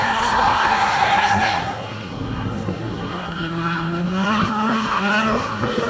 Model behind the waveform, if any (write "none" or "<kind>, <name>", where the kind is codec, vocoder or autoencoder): codec, SNAC